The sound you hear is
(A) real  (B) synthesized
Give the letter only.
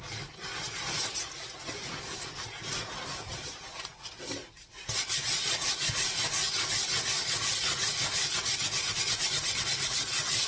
A